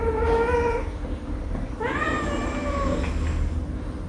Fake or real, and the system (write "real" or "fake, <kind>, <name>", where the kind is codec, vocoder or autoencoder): real